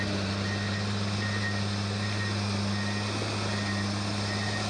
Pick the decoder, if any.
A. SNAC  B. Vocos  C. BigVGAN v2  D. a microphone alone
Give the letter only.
D